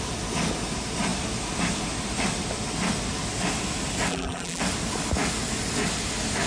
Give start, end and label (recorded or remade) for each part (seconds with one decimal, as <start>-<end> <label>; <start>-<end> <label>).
0.0-4.1 recorded; 4.1-4.6 remade; 4.6-6.5 recorded